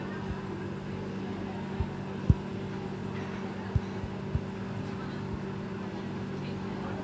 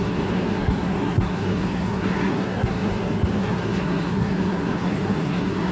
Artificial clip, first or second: second